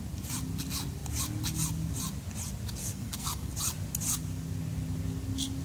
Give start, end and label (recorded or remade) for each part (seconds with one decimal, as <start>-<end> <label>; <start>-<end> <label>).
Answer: 0.0-2.8 recorded; 2.8-3.5 remade; 3.5-5.6 recorded